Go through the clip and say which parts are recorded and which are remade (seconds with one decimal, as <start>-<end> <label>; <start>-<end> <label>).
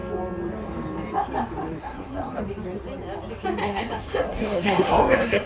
0.0-1.8 recorded; 1.8-2.4 remade; 2.4-3.6 recorded; 3.6-5.5 remade